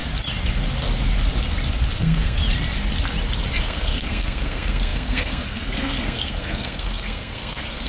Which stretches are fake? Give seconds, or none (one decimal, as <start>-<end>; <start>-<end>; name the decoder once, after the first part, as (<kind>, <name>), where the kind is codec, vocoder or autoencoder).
2.0-2.4 (codec, SNAC); 3.6-7.9